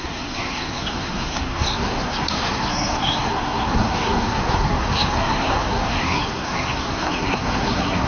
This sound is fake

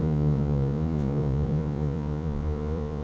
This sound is fake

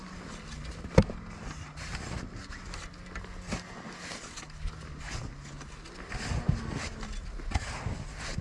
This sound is real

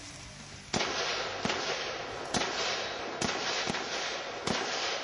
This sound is real